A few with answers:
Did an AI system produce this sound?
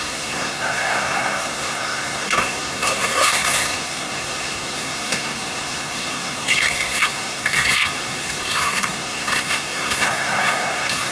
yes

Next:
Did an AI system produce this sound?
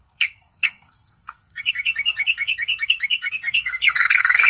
yes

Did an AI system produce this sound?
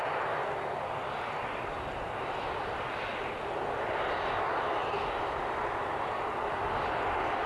no